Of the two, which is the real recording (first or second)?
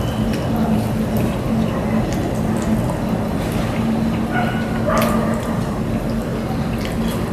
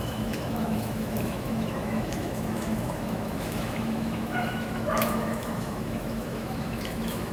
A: first